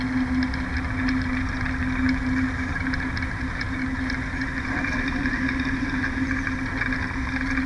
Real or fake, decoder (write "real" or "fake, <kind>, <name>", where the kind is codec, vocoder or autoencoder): real